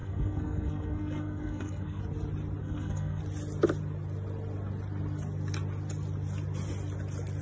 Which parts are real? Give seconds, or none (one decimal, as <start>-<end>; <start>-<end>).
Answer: 2.0-2.6; 3.2-7.4